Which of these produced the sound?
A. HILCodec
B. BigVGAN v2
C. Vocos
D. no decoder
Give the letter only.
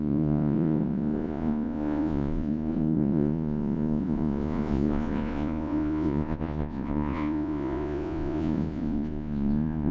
C